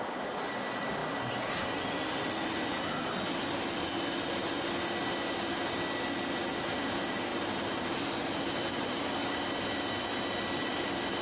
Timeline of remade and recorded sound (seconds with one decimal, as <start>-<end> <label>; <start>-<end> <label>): 0.0-11.2 recorded